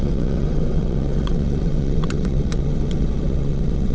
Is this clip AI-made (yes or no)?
yes